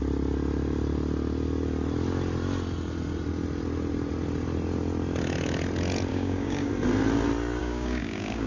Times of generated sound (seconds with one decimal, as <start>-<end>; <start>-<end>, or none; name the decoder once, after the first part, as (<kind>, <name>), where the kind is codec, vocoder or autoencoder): 6.1-6.7 (codec, DAC); 7.6-8.5